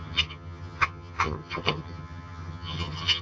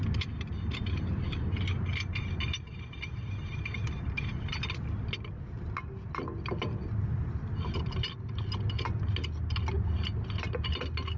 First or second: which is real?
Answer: second